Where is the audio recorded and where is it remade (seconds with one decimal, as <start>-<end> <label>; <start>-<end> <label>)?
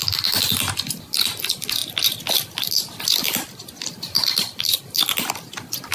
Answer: 0.0-5.9 remade